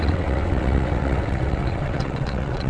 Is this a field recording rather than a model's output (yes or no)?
no